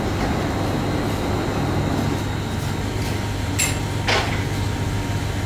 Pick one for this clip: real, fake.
real